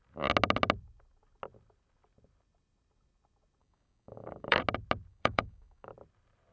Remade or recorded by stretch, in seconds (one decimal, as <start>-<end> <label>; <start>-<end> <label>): 0.0-3.6 recorded; 3.6-4.6 remade; 4.6-5.1 recorded; 5.1-5.9 remade; 5.9-6.5 recorded